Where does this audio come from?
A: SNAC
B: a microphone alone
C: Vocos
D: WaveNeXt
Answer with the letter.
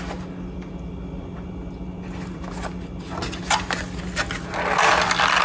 B